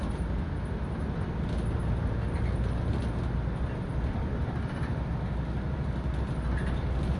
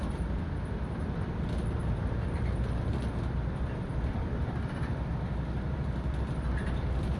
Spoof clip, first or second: second